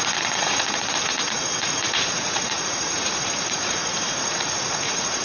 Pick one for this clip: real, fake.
fake